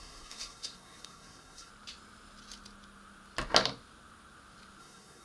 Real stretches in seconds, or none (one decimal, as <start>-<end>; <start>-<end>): 1.7-4.8